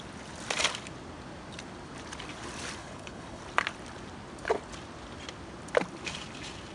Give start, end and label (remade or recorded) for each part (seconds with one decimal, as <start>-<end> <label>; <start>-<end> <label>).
0.0-2.8 recorded; 2.8-3.4 remade; 3.4-6.7 recorded